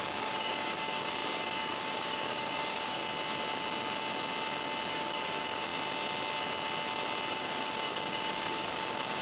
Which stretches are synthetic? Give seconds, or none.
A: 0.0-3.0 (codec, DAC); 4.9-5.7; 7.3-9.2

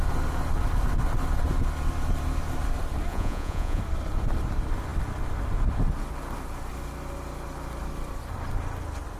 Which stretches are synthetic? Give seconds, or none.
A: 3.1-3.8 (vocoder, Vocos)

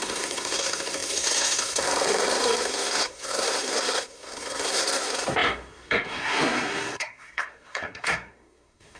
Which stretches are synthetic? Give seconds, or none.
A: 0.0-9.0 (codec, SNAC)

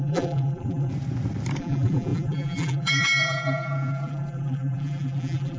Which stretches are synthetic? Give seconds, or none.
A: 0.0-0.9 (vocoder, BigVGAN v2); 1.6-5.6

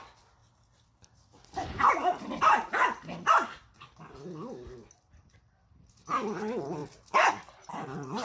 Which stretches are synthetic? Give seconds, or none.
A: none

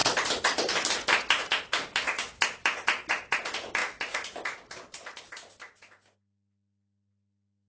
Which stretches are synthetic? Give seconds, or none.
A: none